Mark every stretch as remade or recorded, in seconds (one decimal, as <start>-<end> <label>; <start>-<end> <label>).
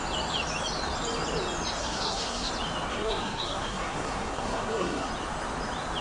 0.0-1.8 recorded; 1.8-2.5 remade; 2.5-2.9 recorded; 2.9-5.1 remade; 5.1-6.0 recorded